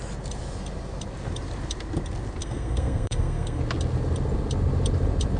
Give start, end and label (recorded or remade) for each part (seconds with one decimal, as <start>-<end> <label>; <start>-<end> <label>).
0.0-2.4 recorded; 2.4-3.6 remade; 3.6-5.4 recorded